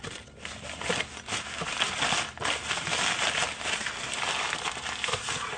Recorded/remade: recorded